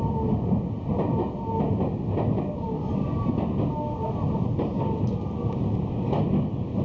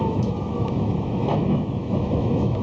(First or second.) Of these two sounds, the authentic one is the first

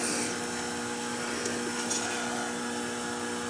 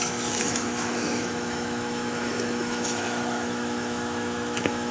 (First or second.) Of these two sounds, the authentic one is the first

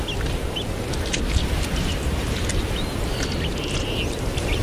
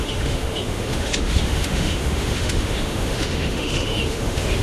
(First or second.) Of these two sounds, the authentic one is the first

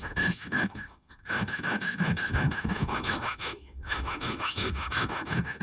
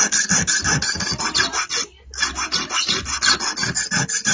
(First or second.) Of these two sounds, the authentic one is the second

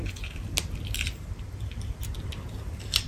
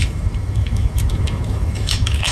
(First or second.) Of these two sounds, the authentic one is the first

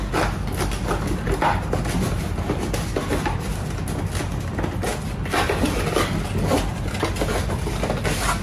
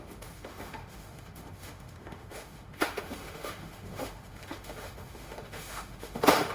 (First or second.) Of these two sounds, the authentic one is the first